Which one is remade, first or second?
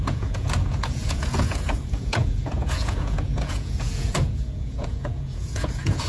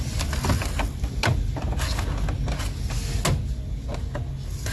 first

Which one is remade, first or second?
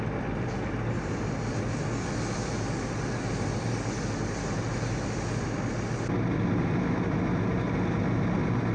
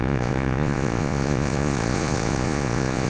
second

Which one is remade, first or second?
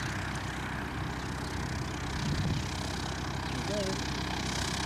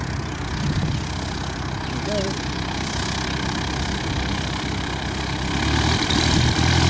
second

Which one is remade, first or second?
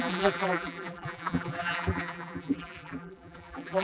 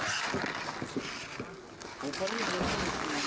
first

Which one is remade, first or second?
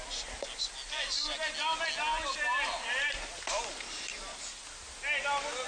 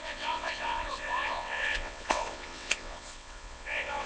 second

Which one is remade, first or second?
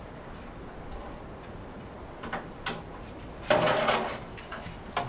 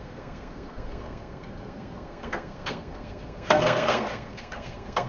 second